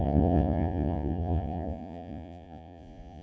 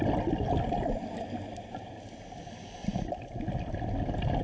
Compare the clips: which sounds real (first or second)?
second